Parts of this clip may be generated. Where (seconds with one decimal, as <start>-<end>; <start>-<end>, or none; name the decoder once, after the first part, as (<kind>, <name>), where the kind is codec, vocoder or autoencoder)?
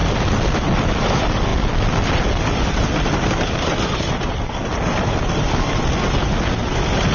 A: none